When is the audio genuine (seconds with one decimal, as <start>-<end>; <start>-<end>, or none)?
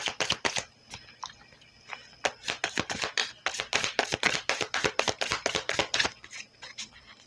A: 1.7-2.6; 3.2-5.0